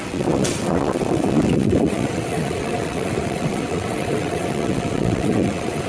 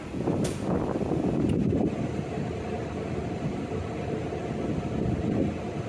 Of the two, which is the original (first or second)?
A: second